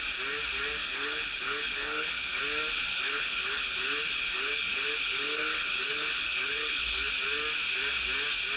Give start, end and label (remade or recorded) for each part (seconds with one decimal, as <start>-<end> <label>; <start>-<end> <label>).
0.0-0.8 recorded; 0.8-2.4 remade; 2.4-2.9 recorded; 2.9-7.1 remade; 7.1-8.6 recorded